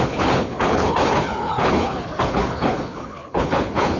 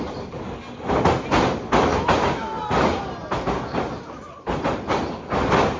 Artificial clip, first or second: first